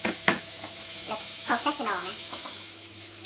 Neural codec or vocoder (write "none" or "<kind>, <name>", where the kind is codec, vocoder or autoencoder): autoencoder, DAC-VAE